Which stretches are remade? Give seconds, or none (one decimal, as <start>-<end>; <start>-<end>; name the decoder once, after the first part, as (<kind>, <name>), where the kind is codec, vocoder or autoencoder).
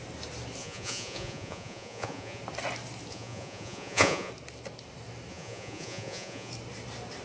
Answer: 0.6-2.4 (vocoder, Vocos); 3.1-4.3; 5.3-6.5